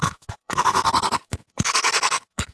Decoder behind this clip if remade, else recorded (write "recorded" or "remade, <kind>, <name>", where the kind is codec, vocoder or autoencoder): remade, codec, SNAC